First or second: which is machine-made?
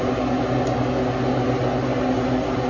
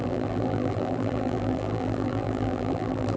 second